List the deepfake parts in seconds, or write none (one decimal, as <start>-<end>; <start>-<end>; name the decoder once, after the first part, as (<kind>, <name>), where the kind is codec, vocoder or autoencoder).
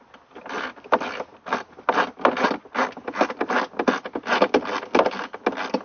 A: none